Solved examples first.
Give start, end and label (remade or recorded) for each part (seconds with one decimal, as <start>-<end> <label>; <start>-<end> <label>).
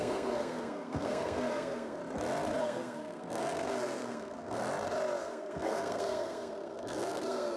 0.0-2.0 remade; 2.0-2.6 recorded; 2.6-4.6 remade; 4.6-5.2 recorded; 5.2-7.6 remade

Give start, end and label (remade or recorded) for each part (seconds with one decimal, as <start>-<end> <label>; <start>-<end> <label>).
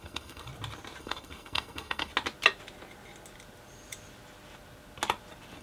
0.0-0.5 remade; 0.5-1.0 recorded; 1.0-2.1 remade; 2.1-5.6 recorded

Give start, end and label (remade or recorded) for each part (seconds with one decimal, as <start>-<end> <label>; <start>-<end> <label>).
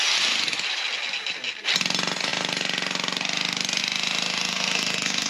0.0-4.5 recorded; 4.5-5.3 remade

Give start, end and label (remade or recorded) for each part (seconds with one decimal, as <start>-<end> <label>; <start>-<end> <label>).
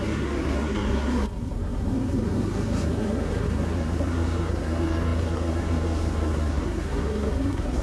0.0-7.8 remade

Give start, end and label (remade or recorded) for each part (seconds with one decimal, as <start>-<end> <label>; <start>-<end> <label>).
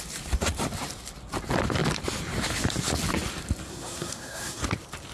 0.0-3.7 recorded; 3.7-4.6 remade; 4.6-5.1 recorded